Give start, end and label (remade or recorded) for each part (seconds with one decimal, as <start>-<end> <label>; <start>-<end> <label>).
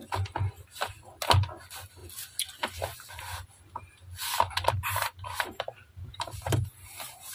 0.0-4.2 recorded; 4.2-7.3 remade